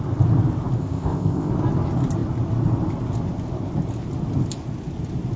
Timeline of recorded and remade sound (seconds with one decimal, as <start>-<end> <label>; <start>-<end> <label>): 0.0-0.8 recorded; 0.8-1.5 remade; 1.5-5.4 recorded